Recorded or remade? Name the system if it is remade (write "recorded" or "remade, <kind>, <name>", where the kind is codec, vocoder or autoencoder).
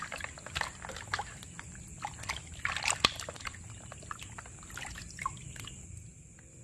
recorded